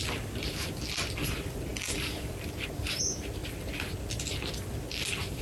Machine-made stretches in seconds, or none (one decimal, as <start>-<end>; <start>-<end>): none